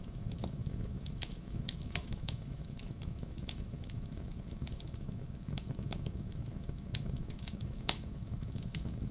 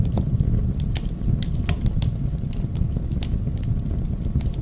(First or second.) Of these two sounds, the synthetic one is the first